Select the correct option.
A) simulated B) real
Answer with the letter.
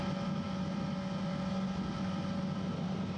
B